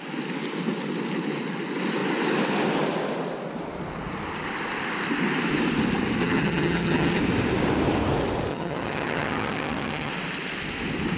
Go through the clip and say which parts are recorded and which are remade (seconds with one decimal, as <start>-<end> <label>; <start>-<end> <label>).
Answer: 0.0-6.2 recorded; 6.2-7.2 remade; 7.2-8.5 recorded; 8.5-10.1 remade; 10.1-11.2 recorded